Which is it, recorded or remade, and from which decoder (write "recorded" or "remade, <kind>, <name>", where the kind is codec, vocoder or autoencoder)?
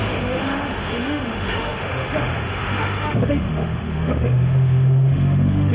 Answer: remade, autoencoder, DAC-VAE